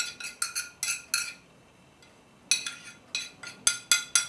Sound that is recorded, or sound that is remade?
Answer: recorded